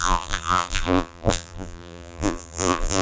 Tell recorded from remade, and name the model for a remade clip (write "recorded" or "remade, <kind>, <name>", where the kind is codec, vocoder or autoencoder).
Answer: remade, vocoder, BigVGAN v2